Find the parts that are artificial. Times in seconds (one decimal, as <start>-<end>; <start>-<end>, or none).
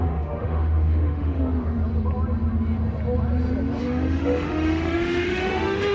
0.0-1.8; 3.8-5.9